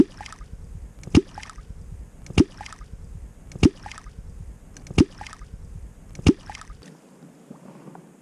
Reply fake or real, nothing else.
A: real